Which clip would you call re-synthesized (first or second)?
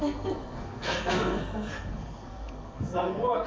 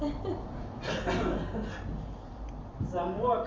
first